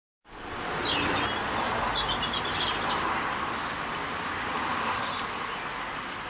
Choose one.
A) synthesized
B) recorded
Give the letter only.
B